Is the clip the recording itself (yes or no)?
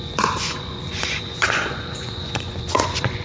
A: no